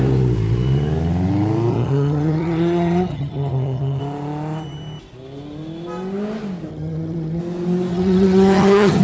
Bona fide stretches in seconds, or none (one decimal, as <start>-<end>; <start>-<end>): 0.0-1.7; 4.0-6.7; 7.4-7.9